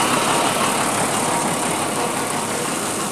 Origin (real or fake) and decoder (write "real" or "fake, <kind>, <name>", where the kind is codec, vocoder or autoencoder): real